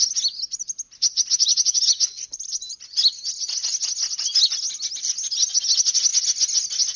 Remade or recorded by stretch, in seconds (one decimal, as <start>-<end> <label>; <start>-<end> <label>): 0.0-7.0 recorded

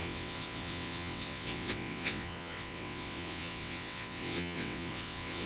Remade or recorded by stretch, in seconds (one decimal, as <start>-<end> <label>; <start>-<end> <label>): 0.0-5.5 remade

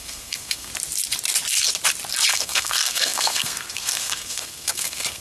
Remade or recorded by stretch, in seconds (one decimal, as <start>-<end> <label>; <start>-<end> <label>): 0.0-0.7 remade; 0.7-2.3 recorded; 2.3-5.2 remade

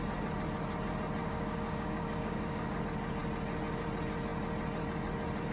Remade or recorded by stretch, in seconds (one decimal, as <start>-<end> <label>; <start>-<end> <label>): 0.0-1.2 recorded; 1.2-2.8 remade; 2.8-5.5 recorded

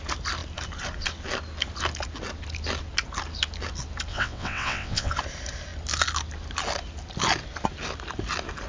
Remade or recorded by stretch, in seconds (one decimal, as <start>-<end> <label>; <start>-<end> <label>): 0.0-4.1 recorded; 4.1-5.1 remade; 5.1-8.7 recorded

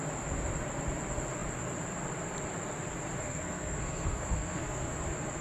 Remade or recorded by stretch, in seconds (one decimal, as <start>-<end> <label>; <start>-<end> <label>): 0.0-3.2 recorded; 3.2-4.9 remade; 4.9-5.4 recorded